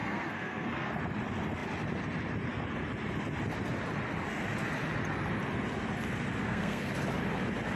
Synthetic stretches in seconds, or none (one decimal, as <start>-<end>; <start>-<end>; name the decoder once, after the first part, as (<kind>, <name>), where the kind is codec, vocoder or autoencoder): 0.0-0.9 (codec, SNAC); 6.4-6.9